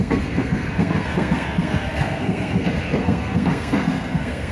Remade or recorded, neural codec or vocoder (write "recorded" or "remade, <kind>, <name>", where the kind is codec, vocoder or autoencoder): remade, codec, SNAC